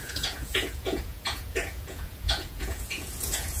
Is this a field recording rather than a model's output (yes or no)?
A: no